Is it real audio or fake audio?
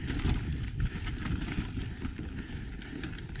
real